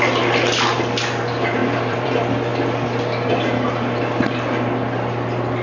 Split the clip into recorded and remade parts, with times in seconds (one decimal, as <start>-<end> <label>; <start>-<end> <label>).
0.0-1.6 recorded; 1.6-2.1 remade; 2.1-5.6 recorded